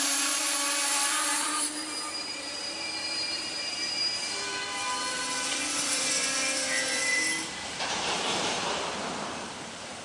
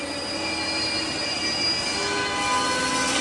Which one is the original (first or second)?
second